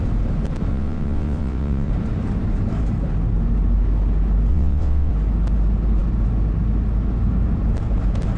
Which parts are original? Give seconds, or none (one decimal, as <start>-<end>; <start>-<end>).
0.0-0.7; 1.9-4.5; 5.1-8.4